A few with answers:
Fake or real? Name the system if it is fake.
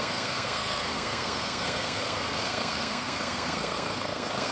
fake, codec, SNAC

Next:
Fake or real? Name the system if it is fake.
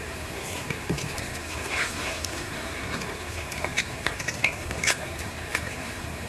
fake, codec, SNAC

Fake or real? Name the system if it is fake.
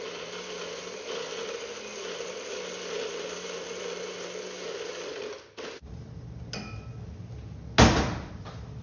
real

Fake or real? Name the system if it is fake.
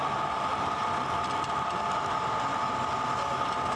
real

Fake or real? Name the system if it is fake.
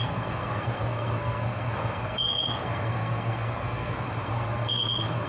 fake, codec, SNAC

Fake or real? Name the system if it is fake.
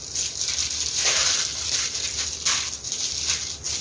real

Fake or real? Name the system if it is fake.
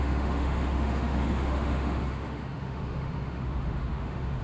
fake, autoencoder, DAC-VAE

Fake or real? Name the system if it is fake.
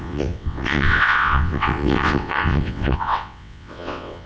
fake, vocoder, WaveNeXt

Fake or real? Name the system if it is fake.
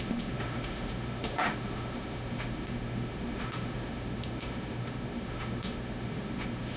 fake, autoencoder, DAC-VAE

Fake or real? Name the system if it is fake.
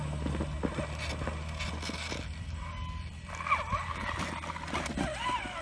real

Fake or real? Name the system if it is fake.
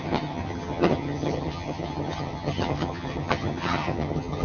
fake, vocoder, HiFi-GAN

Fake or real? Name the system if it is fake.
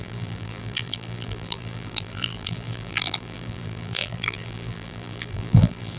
fake, vocoder, BigVGAN v2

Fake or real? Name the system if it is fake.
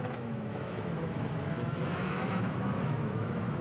fake, autoencoder, DAC-VAE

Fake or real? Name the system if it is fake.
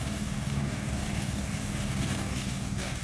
fake, codec, DAC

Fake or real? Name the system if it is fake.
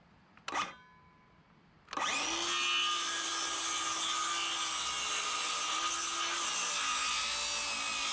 real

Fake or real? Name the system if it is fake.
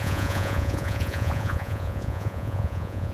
fake, vocoder, Vocos